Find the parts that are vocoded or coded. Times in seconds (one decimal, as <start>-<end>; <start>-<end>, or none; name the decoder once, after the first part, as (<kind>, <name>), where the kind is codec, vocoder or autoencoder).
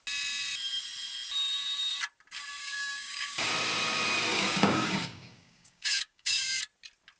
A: 2.6-3.5 (codec, DAC); 4.3-6.6